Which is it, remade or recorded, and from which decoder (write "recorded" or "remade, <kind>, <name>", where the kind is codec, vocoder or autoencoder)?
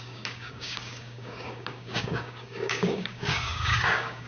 remade, codec, DAC